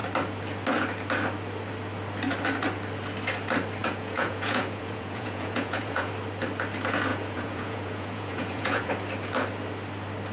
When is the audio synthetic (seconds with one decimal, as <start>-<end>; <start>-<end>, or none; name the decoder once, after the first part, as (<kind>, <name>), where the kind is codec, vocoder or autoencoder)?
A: 3.8-6.1 (vocoder, Vocos); 7.1-8.9